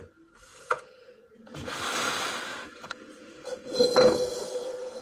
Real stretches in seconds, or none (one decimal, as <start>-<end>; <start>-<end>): 0.0-0.5; 1.7-2.5